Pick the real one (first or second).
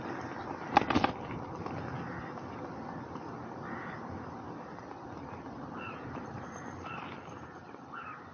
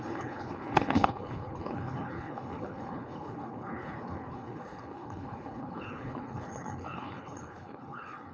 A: first